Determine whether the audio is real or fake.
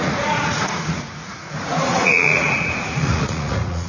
fake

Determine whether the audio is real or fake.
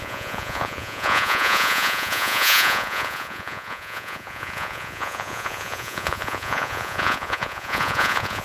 fake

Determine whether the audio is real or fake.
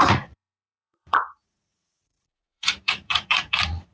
fake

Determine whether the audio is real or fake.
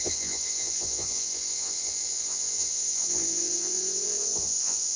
fake